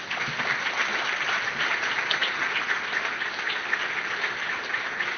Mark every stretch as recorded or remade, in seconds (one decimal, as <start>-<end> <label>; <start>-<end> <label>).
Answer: 0.0-5.2 recorded